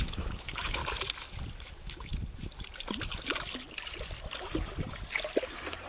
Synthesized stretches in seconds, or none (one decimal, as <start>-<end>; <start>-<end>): 0.0-0.8; 1.6-2.1